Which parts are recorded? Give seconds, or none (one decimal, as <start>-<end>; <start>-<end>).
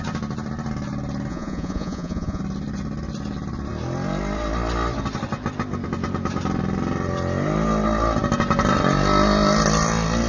0.0-1.3; 2.4-10.3